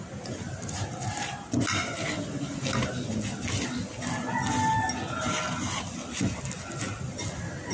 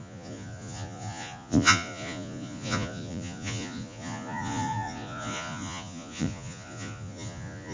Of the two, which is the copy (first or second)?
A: second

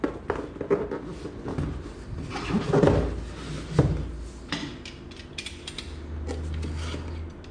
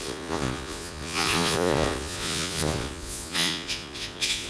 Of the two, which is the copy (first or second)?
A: second